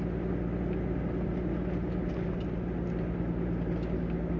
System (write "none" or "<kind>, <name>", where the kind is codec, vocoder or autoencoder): none